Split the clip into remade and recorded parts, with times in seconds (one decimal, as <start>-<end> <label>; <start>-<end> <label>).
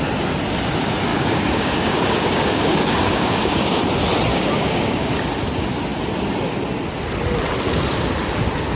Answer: 0.0-1.1 recorded; 1.1-3.8 remade; 3.8-4.3 recorded; 4.3-5.1 remade; 5.1-8.8 recorded